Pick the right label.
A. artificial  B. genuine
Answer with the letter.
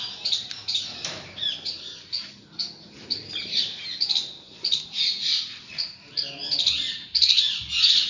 B